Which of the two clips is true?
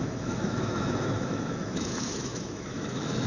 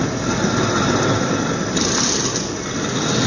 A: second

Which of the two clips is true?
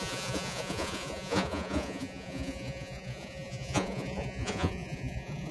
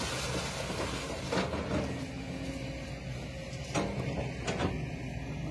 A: second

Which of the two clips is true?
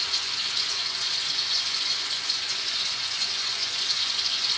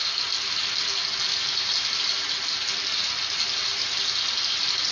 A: second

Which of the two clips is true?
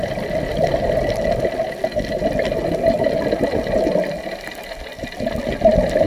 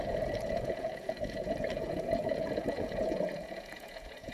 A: first